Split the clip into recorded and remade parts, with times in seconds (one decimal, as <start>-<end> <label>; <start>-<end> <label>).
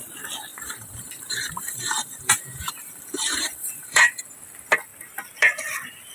0.0-0.5 recorded; 0.5-4.2 remade; 4.2-6.1 recorded